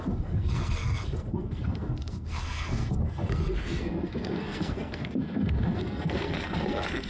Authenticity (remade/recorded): remade